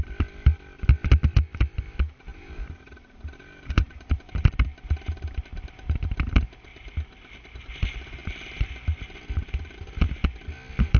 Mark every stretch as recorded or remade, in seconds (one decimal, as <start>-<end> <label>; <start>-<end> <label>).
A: 0.0-2.3 recorded; 2.3-4.3 remade; 4.3-8.2 recorded; 8.2-8.8 remade; 8.8-11.0 recorded

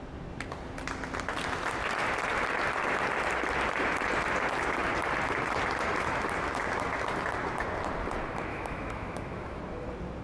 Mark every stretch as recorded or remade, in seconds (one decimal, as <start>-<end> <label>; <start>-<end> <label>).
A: 0.0-8.5 recorded; 8.5-9.6 remade; 9.6-10.2 recorded

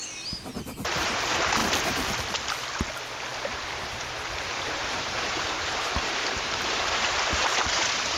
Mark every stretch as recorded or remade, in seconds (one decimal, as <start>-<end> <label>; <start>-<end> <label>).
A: 0.0-3.3 recorded; 3.3-8.2 remade

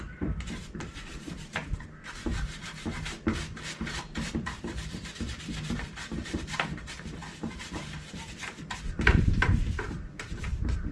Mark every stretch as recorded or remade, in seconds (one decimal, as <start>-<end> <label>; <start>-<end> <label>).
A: 0.0-10.9 remade